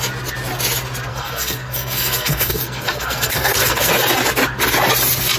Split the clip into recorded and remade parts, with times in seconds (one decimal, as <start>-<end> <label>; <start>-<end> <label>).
0.0-1.1 recorded; 1.1-3.9 remade; 3.9-5.4 recorded